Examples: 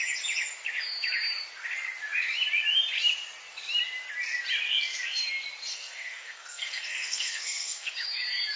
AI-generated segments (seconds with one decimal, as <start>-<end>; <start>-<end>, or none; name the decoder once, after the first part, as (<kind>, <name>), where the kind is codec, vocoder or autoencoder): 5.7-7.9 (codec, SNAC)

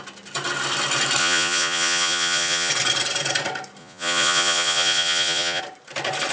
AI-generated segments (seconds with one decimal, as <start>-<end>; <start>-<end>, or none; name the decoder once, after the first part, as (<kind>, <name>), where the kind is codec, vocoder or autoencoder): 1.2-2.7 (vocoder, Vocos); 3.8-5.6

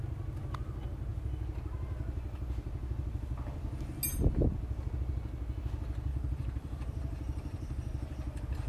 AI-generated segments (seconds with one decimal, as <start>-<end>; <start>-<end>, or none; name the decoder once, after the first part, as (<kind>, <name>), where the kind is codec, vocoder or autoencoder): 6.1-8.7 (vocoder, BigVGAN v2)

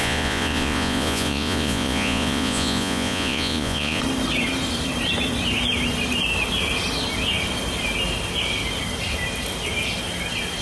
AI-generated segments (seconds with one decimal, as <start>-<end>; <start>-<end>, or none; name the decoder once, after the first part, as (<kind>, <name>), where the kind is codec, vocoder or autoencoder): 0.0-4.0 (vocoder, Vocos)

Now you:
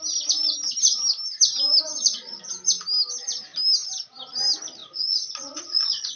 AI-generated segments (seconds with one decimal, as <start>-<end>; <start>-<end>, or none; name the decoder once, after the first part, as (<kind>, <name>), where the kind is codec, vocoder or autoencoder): 1.9-2.5 (vocoder, Vocos); 4.8-6.2

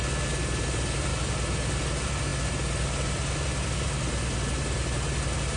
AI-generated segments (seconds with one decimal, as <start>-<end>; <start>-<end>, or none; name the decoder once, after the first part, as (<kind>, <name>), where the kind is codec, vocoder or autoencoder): none